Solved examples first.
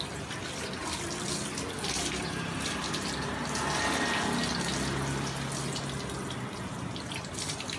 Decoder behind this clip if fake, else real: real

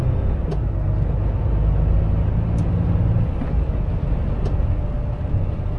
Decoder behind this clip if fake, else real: real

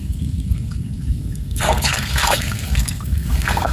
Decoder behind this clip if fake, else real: fake, codec, SNAC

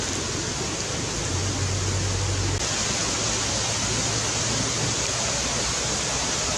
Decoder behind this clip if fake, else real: real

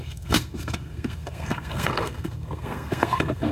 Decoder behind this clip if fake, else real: fake, codec, SNAC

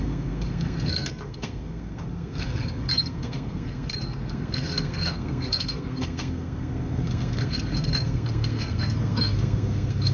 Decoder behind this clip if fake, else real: fake, codec, SNAC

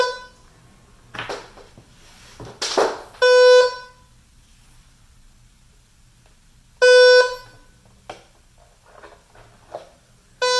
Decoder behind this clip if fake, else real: real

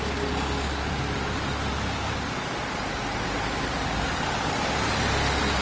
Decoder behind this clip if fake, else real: real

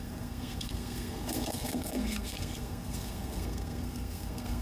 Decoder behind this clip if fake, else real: fake, codec, SNAC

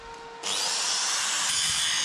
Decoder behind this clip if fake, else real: real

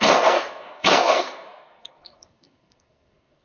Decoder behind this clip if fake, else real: fake, codec, SNAC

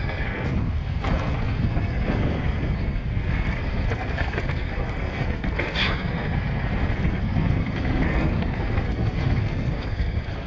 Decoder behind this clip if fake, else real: fake, codec, SNAC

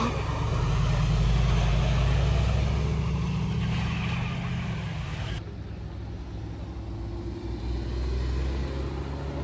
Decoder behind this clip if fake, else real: real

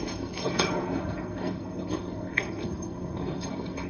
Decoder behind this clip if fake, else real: fake, codec, SNAC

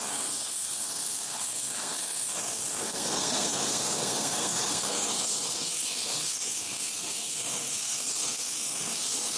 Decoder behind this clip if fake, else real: fake, codec, SNAC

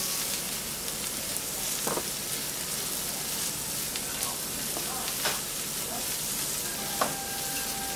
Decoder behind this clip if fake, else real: real